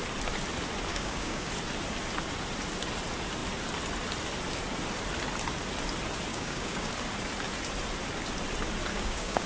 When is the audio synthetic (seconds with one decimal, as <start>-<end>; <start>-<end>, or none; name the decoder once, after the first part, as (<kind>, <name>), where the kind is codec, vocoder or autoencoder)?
0.9-1.5 (codec, DAC); 6.3-6.9; 8.9-9.5